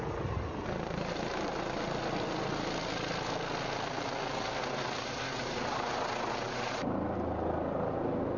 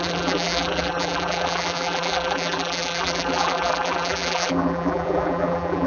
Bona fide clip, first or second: first